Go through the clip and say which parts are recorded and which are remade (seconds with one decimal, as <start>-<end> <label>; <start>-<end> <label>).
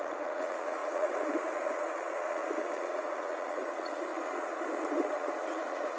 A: 0.0-6.0 remade